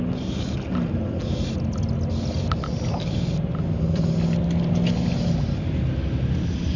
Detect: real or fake real